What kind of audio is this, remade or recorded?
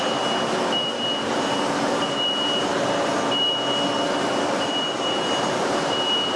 recorded